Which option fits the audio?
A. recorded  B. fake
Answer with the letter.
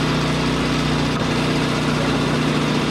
A